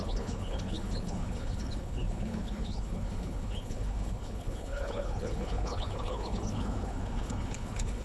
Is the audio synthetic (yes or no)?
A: yes